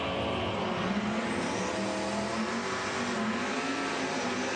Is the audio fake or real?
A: real